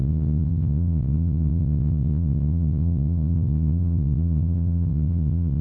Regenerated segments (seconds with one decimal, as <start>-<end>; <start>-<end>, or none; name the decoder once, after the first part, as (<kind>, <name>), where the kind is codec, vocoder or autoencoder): 0.0-5.6 (vocoder, Vocos)

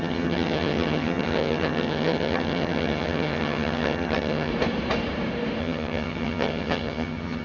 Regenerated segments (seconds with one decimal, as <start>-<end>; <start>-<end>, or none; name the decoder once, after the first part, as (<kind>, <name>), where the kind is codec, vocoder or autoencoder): 0.0-4.5 (vocoder, HiFi-GAN); 5.6-7.4

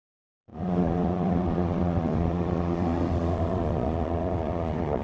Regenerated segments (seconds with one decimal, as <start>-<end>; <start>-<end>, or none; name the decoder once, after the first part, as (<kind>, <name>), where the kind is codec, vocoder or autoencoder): 0.0-5.0 (vocoder, Vocos)

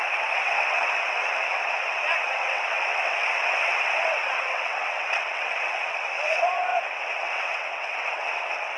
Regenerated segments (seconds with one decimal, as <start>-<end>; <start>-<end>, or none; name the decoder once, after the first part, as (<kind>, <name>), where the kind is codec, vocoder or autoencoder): 0.0-8.8 (vocoder, WaveNeXt)

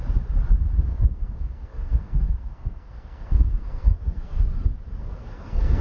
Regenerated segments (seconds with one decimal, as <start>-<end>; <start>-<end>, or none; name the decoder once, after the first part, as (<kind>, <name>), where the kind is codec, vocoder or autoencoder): 0.9-4.4 (codec, SNAC); 5.0-5.8

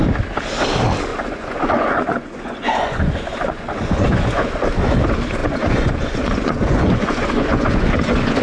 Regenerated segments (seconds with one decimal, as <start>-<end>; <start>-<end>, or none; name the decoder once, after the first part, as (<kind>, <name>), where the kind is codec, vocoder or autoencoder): 1.1-4.5 (vocoder, Vocos); 5.4-8.4

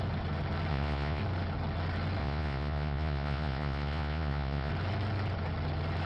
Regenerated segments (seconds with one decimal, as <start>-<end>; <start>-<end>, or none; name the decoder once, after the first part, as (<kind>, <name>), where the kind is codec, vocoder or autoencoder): 0.7-1.2 (vocoder, Vocos); 2.2-4.7

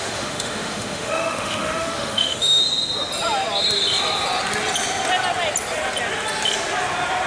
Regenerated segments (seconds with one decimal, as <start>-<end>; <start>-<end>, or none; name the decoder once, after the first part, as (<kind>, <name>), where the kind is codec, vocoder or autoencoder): 0.0-2.6 (autoencoder, DAC-VAE)